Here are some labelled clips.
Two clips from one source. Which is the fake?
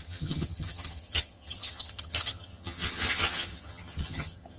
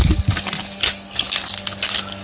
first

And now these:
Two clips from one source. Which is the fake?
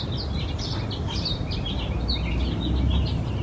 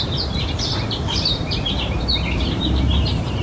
second